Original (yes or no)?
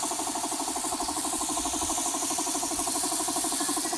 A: no